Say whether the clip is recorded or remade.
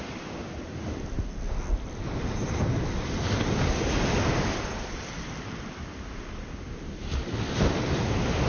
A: recorded